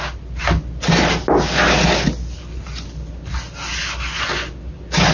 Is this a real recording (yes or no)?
yes